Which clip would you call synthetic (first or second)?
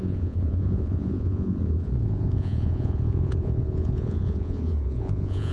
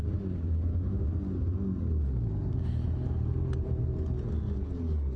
first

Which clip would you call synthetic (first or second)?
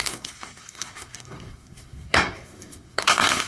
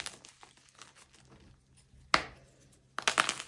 first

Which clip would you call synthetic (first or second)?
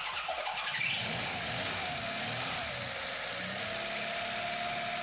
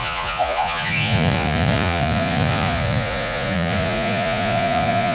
second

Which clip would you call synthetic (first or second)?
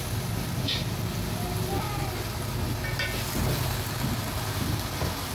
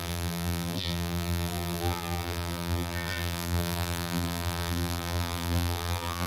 second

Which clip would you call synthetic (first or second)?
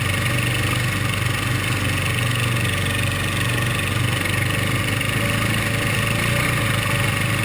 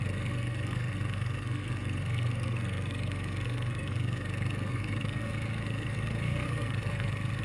second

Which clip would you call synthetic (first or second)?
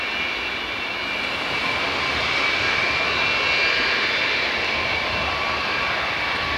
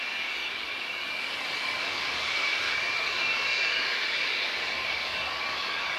second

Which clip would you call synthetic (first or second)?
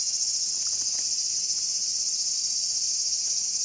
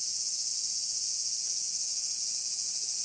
second